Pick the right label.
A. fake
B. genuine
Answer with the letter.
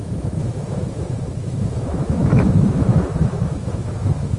A